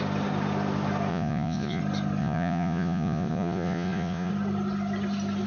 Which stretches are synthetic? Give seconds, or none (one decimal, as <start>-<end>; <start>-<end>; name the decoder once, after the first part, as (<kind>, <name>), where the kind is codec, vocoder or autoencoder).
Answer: 1.1-1.8 (vocoder, Vocos); 2.2-4.3